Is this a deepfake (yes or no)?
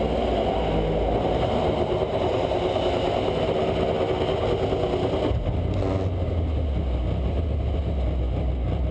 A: no